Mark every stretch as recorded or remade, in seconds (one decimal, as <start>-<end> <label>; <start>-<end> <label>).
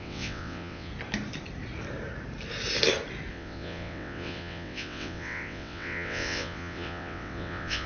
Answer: 0.0-0.9 remade; 0.9-3.3 recorded; 3.3-7.9 remade